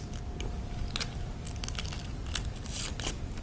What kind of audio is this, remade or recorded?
recorded